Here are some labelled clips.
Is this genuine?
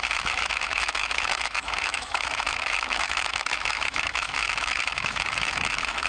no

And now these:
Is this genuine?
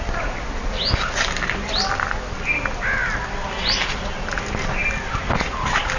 yes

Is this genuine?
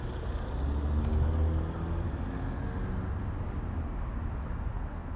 yes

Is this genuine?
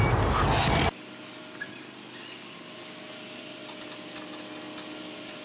yes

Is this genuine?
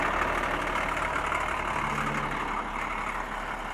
yes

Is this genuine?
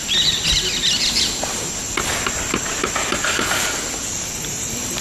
yes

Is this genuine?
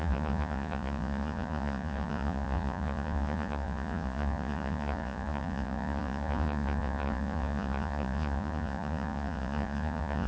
no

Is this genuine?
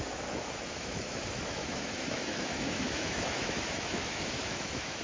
no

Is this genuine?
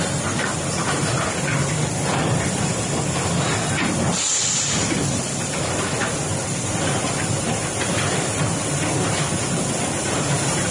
yes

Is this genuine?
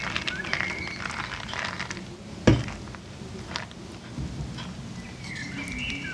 yes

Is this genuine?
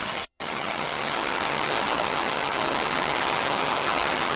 no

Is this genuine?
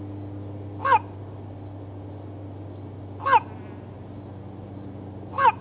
yes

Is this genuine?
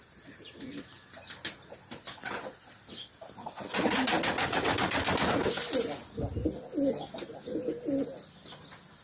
yes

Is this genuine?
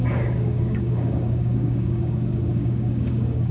no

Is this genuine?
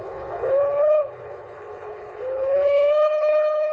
no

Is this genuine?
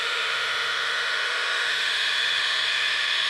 no